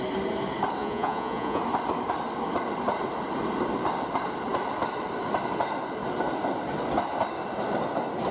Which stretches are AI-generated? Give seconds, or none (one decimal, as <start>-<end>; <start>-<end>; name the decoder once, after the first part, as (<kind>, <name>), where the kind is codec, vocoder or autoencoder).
0.8-1.6 (vocoder, Vocos)